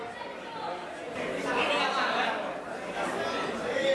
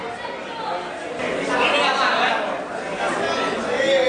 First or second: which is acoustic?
second